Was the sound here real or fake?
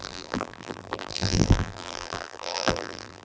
fake